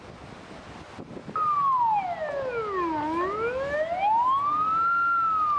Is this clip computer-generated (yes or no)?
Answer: no